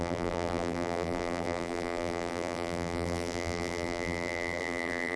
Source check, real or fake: fake